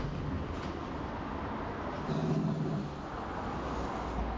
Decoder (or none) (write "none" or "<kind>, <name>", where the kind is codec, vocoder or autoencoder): none